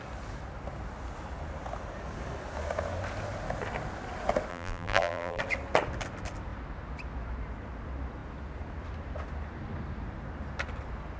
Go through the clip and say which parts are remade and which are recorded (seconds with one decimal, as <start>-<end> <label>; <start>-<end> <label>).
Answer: 0.0-4.5 recorded; 4.5-5.4 remade; 5.4-11.2 recorded